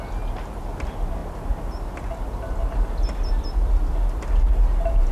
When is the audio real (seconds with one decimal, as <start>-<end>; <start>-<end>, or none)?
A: 0.0-5.1